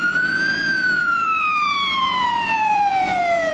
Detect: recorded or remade remade